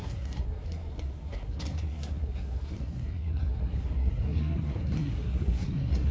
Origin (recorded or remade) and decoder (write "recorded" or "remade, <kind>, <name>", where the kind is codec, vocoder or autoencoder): remade, codec, SNAC